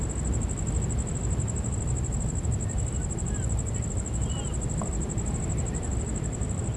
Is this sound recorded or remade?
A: recorded